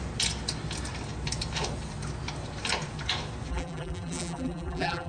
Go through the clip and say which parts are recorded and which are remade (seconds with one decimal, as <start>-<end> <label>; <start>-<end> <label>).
0.0-3.5 recorded; 3.5-5.1 remade